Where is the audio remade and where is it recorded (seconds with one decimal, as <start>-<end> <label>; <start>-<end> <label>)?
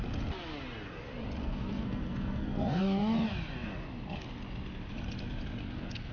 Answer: 0.0-1.4 recorded; 1.4-2.8 remade; 2.8-5.6 recorded; 5.6-6.1 remade